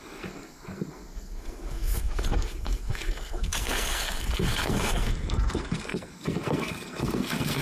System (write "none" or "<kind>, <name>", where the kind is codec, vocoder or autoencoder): codec, SNAC